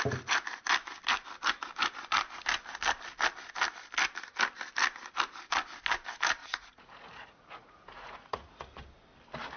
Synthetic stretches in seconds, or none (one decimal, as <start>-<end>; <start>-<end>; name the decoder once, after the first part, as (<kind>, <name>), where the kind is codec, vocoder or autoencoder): 6.4-8.6 (vocoder, Vocos)